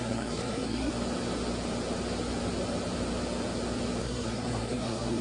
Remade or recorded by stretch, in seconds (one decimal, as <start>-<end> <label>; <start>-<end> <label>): 0.0-0.9 remade; 0.9-4.0 recorded; 4.0-5.2 remade